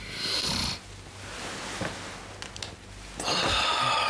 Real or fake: real